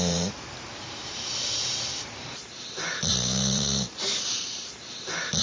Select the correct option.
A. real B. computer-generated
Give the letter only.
B